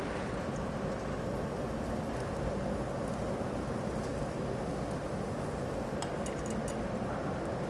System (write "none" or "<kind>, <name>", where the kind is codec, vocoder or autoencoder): none